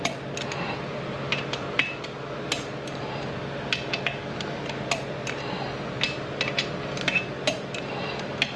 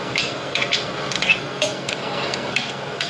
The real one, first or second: first